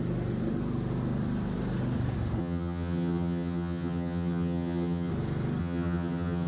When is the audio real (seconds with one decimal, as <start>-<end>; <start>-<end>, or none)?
0.0-2.4; 5.1-5.6